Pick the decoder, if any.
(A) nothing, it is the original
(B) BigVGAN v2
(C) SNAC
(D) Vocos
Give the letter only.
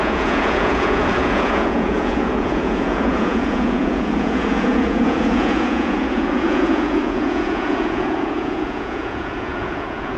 D